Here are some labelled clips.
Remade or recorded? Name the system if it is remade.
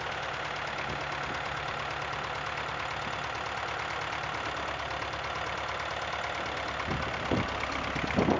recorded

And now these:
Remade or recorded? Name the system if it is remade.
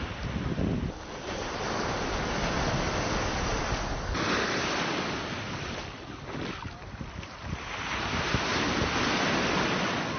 recorded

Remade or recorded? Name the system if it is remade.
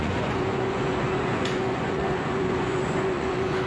remade, vocoder, Vocos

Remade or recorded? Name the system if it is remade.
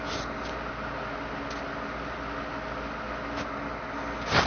recorded